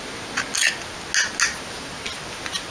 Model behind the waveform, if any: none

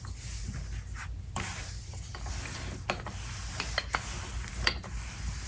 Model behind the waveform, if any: none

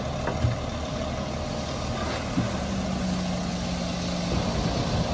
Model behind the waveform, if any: none